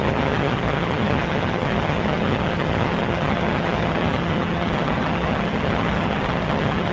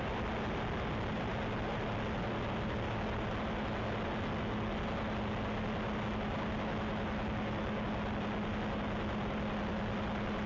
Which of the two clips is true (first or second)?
second